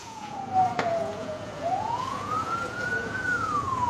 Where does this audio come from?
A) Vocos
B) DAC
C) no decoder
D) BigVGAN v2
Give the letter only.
A